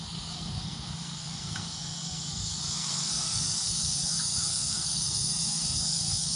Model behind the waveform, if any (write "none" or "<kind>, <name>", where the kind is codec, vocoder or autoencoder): codec, SNAC